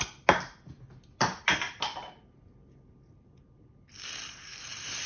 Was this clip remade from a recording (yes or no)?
no